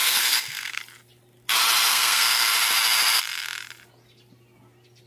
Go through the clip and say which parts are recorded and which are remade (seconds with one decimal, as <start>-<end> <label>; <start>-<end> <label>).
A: 0.0-0.8 remade; 0.8-1.9 recorded; 1.9-2.5 remade; 2.5-5.1 recorded